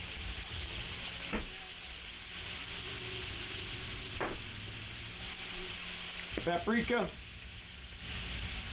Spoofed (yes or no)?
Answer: no